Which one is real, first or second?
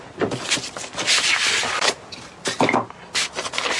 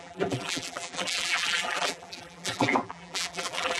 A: first